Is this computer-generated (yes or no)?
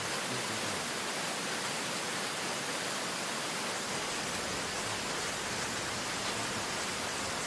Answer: no